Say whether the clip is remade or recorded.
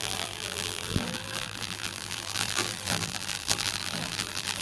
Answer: remade